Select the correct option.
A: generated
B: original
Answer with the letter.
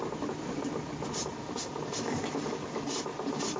B